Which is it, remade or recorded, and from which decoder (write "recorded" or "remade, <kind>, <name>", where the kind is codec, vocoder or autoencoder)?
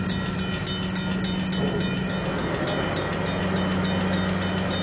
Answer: recorded